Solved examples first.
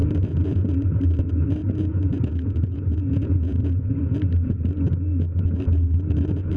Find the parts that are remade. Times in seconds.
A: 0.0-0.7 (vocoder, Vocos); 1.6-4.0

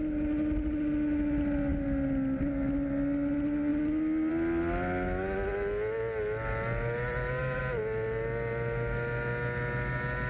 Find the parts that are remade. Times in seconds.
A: none

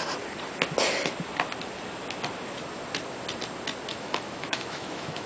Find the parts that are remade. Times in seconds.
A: 3.9-5.3 (autoencoder, DAC-VAE)

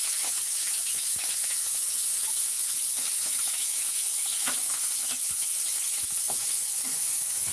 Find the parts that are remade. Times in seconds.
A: 0.0-7.5 (autoencoder, DAC-VAE)

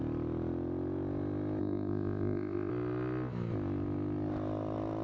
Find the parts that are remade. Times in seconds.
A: 1.6-2.7 (codec, ZipCodec)

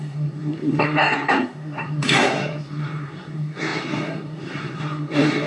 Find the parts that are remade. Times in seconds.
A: 0.0-5.5 (codec, SNAC)

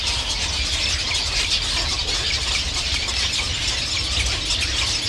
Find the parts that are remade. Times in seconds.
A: none

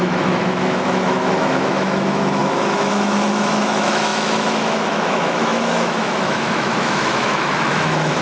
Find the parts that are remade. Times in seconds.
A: 0.0-8.2 (autoencoder, DAC-VAE)